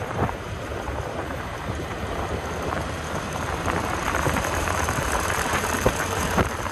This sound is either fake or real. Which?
fake